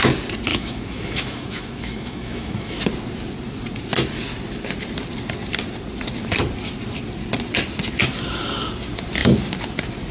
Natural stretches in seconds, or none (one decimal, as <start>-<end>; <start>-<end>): 0.0-0.5; 2.8-10.1